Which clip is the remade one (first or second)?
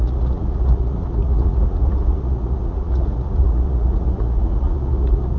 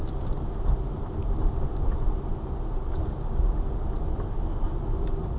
first